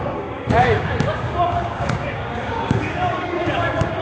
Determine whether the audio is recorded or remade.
remade